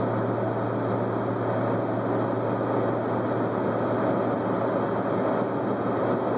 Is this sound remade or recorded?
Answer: recorded